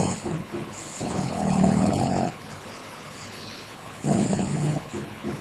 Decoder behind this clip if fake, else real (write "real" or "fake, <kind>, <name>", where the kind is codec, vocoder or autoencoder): fake, codec, HILCodec